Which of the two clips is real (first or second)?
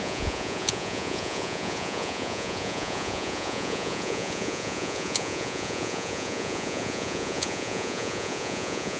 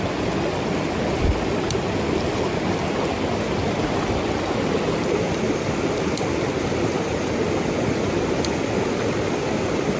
second